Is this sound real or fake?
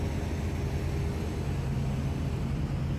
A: real